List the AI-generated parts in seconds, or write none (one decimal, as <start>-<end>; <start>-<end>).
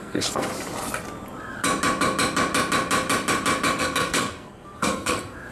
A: 0.0-0.5; 3.8-5.5